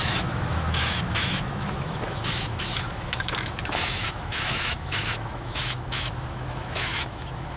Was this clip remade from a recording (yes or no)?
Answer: yes